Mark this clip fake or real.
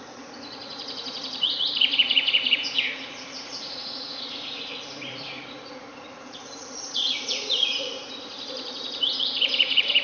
fake